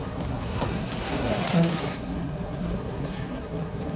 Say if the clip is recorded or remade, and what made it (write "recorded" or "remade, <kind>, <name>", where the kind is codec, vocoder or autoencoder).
remade, codec, SNAC